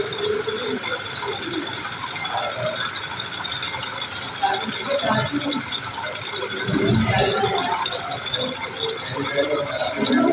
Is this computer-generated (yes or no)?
no